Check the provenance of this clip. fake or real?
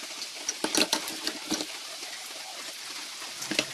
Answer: real